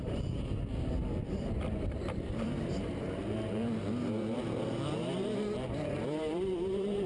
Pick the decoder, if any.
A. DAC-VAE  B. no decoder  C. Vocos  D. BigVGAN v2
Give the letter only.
D